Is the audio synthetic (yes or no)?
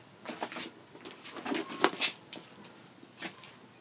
no